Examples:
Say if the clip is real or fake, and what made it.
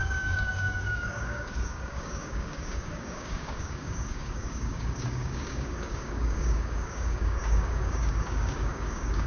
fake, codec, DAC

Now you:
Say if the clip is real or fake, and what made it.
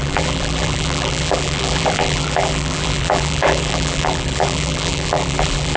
fake, vocoder, BigVGAN v2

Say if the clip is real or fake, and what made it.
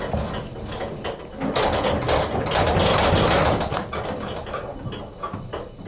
real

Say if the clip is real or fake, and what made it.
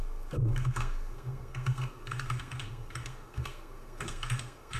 fake, codec, SNAC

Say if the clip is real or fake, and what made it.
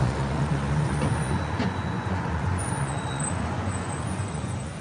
fake, vocoder, Vocos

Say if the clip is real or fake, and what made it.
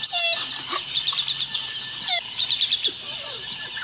real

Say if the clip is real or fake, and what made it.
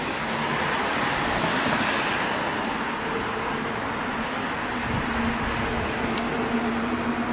real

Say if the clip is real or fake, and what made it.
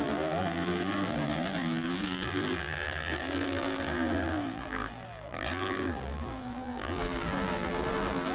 fake, vocoder, BigVGAN v2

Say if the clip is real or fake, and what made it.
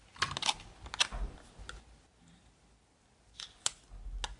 real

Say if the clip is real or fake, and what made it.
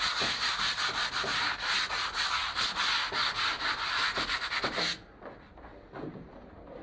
real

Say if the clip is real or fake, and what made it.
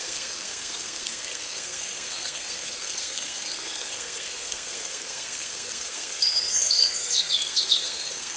fake, codec, SNAC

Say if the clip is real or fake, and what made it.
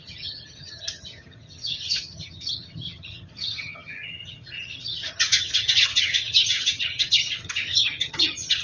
fake, vocoder, HiFi-GAN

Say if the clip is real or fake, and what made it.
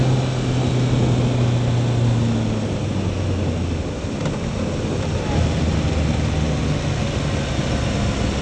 real